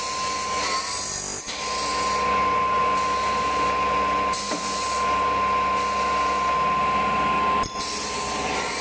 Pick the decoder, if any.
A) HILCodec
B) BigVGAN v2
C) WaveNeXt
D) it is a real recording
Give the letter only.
D